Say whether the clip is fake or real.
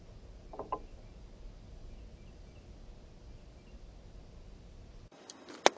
real